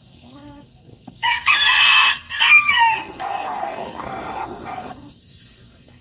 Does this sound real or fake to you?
fake